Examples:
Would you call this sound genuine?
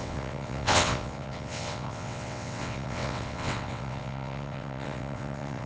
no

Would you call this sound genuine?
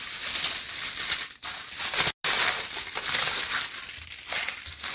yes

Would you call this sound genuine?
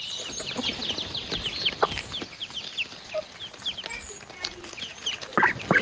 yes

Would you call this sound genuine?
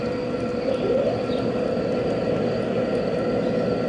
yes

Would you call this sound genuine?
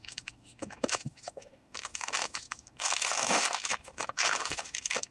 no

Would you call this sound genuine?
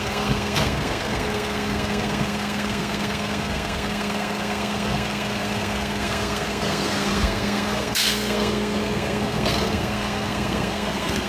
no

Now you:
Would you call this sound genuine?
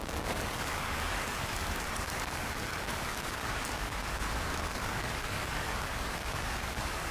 no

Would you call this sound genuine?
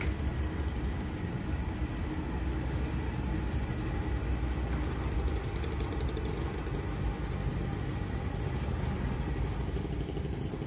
yes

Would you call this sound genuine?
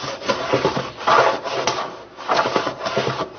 yes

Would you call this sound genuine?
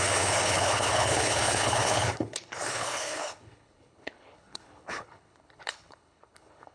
no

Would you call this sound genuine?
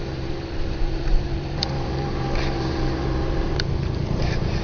no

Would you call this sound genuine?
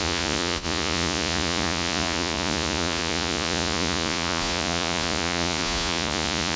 no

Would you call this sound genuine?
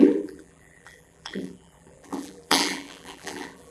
no